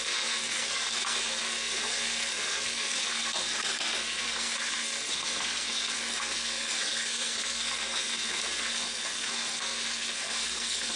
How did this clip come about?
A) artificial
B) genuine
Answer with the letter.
A